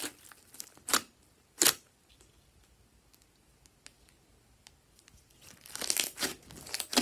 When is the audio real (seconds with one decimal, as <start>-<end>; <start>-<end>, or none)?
0.0-7.0